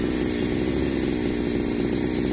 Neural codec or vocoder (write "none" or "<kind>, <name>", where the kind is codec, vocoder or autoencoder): none